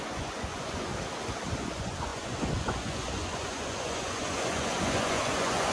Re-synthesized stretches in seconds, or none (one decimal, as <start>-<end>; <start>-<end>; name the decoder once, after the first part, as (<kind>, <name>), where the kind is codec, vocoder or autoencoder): 0.0-0.9 (vocoder, Vocos); 1.6-5.7